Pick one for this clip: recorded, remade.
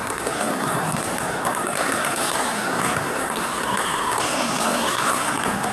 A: remade